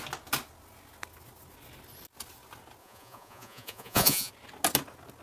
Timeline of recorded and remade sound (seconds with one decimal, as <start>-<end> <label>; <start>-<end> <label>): 0.0-2.8 recorded; 2.8-4.3 remade; 4.3-5.2 recorded